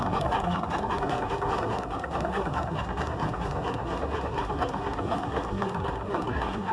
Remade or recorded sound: remade